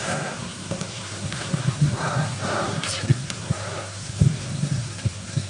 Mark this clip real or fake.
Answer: fake